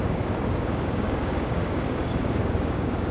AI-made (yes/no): yes